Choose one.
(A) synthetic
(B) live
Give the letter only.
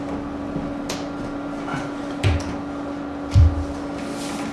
B